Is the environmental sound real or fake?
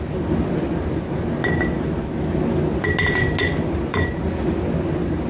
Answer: real